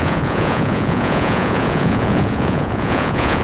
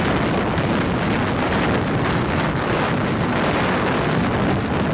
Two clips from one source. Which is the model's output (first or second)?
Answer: first